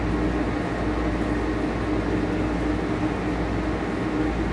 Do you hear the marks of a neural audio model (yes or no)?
no